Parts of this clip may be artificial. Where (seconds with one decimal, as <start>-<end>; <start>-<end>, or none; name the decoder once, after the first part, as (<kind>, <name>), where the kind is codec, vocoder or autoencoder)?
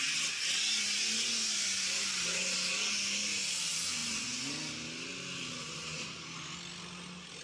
none